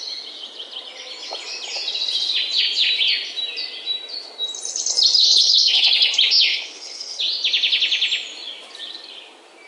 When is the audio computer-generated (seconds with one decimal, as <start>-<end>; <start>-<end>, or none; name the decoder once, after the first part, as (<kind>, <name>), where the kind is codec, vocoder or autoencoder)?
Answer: 5.2-5.9 (codec, HILCodec); 6.5-7.2